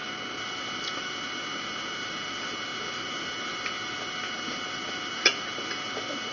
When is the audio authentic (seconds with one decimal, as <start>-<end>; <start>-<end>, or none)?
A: 0.0-6.3

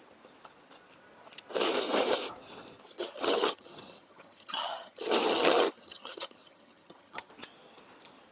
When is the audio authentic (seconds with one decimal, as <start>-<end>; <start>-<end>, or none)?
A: 0.0-2.9; 7.3-8.3

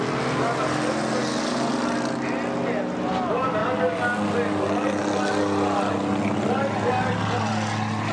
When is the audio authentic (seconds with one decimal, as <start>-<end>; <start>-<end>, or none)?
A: 0.0-8.1

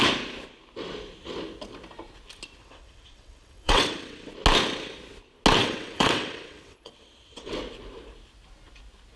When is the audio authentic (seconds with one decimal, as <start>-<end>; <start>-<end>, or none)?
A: 0.0-2.6; 4.3-5.6; 7.5-9.2

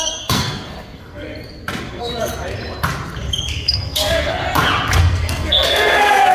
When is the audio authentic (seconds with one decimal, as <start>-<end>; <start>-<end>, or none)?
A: 1.3-1.9; 2.3-3.4; 4.4-5.0